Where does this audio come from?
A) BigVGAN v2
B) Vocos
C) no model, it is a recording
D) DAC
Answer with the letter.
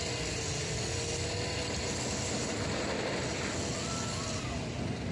C